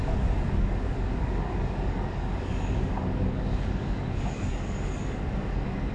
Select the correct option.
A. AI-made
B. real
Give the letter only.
A